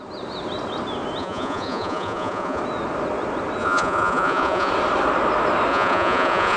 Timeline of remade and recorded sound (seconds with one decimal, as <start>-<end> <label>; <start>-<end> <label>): 0.0-1.2 recorded; 1.2-2.6 remade; 2.6-3.6 recorded; 3.6-4.7 remade; 4.7-5.7 recorded; 5.7-6.6 remade